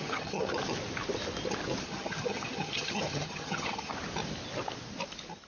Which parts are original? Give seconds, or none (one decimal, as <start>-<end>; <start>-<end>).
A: 0.5-1.8; 3.9-5.5